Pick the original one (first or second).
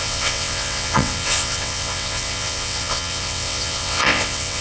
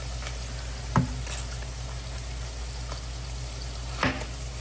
second